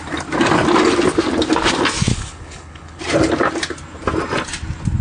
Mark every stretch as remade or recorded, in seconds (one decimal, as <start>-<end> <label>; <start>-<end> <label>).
0.0-2.1 recorded; 2.1-3.0 remade; 3.0-5.0 recorded

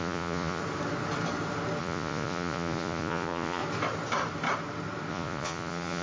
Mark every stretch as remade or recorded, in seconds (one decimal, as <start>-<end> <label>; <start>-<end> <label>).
0.0-0.6 remade; 0.6-1.8 recorded; 1.8-3.6 remade; 3.6-5.1 recorded; 5.1-6.0 remade

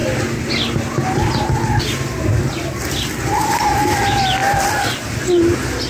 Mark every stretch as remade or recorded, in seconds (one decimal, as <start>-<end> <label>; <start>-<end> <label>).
0.0-1.8 remade; 1.8-4.4 recorded; 4.4-5.9 remade